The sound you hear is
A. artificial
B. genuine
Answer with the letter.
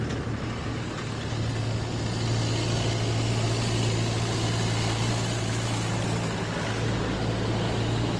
B